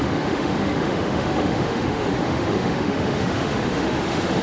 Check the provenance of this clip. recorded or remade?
remade